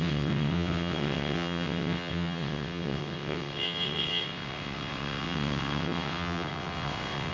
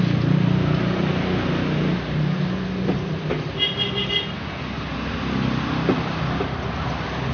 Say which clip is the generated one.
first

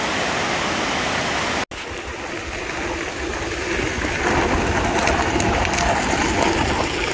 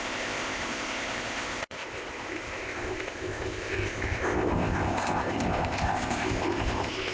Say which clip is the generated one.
second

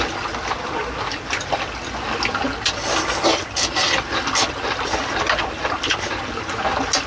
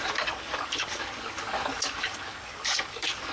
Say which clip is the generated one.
second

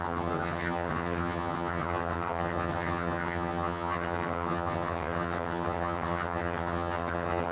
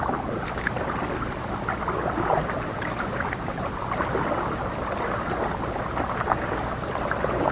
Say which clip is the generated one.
first